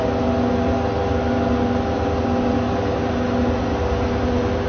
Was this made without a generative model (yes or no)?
yes